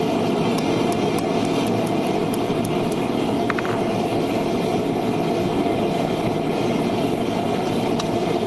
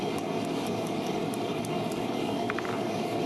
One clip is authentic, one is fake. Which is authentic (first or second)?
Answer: first